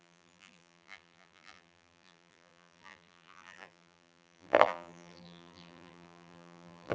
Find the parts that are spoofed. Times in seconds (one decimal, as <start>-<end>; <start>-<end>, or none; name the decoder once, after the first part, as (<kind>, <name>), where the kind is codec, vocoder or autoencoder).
0.0-6.9 (vocoder, BigVGAN v2)